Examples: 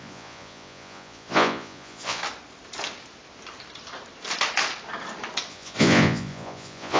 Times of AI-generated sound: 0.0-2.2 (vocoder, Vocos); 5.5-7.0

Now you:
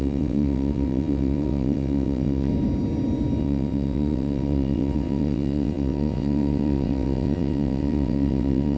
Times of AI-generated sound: 0.0-2.5 (vocoder, WaveNeXt); 3.4-8.8

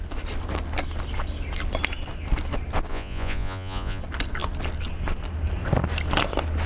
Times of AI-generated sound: 2.9-4.0 (vocoder, Vocos)

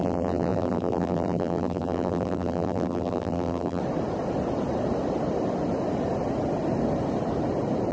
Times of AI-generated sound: 0.0-3.8 (vocoder, BigVGAN v2)

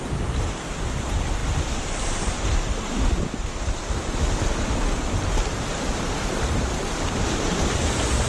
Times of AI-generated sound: none

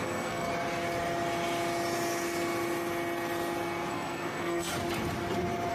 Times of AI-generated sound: 0.0-0.5 (codec, SNAC); 3.9-4.7